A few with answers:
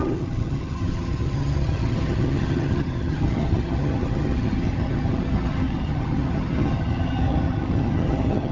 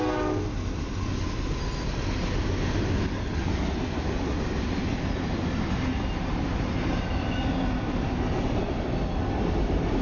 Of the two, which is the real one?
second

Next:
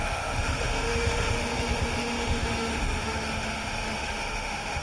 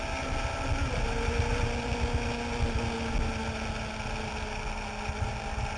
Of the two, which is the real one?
second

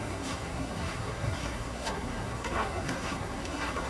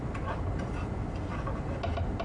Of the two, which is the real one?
second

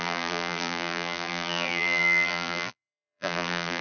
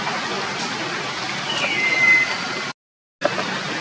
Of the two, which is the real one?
second